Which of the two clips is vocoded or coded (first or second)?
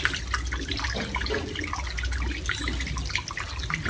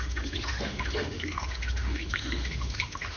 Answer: second